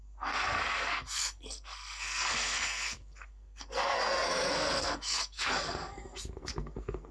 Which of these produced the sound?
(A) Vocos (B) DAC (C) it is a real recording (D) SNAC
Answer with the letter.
D